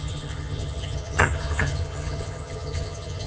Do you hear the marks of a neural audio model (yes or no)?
yes